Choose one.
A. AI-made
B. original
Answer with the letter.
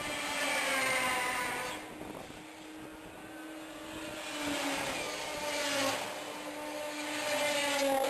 B